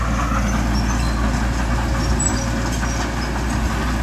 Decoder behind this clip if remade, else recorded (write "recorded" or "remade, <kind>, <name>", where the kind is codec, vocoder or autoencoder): recorded